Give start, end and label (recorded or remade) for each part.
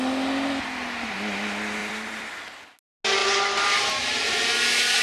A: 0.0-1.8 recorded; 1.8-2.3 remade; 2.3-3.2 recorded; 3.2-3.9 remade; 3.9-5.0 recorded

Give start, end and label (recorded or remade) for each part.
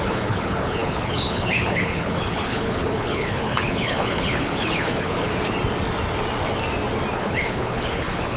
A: 0.0-5.3 remade; 5.3-7.1 recorded; 7.1-8.4 remade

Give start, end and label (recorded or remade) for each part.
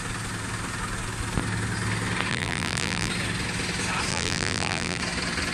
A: 0.0-2.3 recorded; 2.3-3.1 remade; 3.1-4.1 recorded; 4.1-5.0 remade; 5.0-5.5 recorded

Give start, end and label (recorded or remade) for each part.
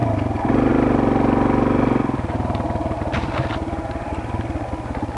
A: 0.0-5.2 recorded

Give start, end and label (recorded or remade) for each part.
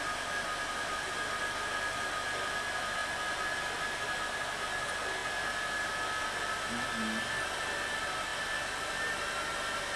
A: 0.0-10.0 recorded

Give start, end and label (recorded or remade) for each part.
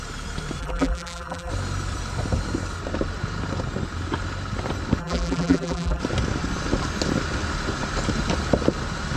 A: 0.0-0.6 recorded; 0.6-1.5 remade; 1.5-5.0 recorded; 5.0-6.0 remade; 6.0-9.2 recorded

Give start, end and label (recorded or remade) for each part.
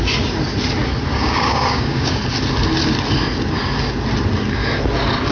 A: 0.0-1.1 recorded; 1.1-2.2 remade; 2.2-5.3 recorded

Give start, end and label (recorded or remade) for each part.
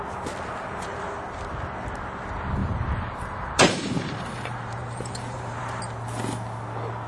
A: 0.0-0.6 recorded; 0.6-1.1 remade; 1.1-2.6 recorded; 2.6-5.8 remade; 5.8-7.1 recorded